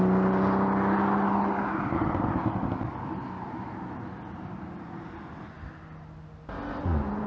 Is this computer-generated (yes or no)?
no